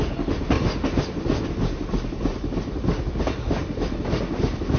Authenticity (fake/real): real